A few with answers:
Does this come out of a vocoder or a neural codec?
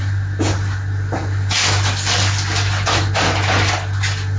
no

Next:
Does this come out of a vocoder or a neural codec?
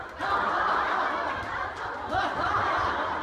no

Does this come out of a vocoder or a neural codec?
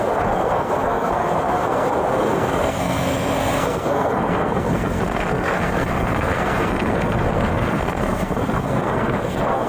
yes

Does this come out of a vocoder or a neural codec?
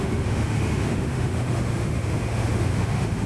yes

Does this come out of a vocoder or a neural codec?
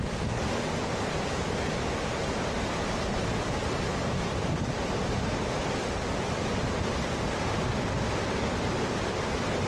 no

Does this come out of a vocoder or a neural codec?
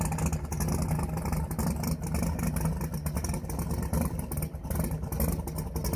no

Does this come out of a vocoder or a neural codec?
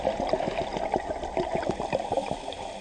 no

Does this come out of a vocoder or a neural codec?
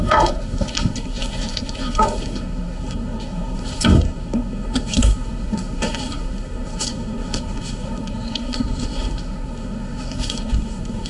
yes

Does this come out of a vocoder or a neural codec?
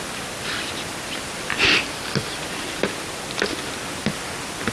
no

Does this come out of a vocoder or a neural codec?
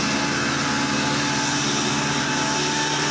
no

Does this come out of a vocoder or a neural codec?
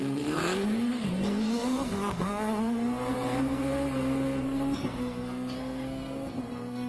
yes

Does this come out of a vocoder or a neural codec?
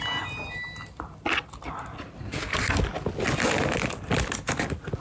no